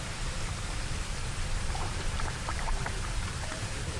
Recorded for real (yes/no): no